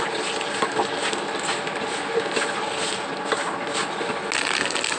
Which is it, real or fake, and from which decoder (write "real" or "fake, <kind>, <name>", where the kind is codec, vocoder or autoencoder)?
real